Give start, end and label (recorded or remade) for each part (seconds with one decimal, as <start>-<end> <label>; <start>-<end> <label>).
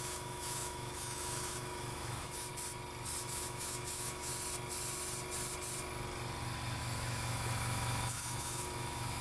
0.0-2.5 remade; 2.5-3.2 recorded; 3.2-4.3 remade; 4.3-6.8 recorded; 6.8-9.2 remade